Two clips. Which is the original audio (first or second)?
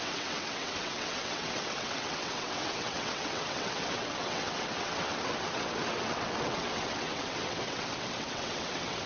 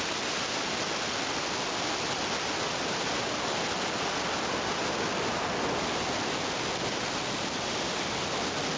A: second